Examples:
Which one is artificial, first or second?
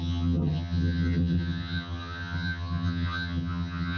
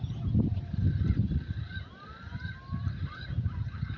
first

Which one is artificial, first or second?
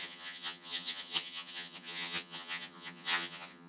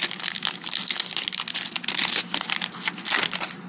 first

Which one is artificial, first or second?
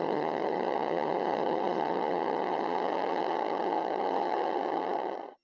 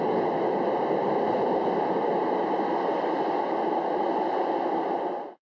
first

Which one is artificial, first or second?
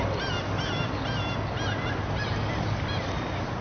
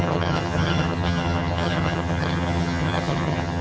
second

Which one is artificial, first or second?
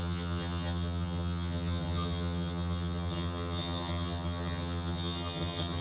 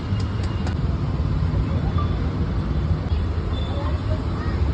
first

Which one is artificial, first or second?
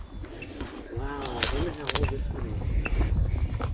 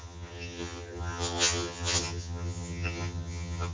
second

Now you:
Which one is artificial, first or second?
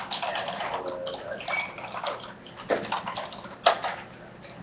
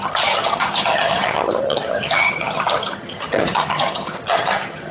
second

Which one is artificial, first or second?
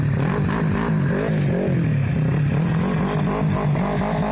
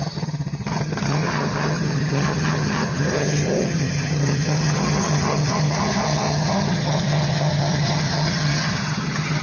second